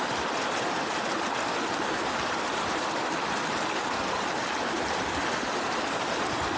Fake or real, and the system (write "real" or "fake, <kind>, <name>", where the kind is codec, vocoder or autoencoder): real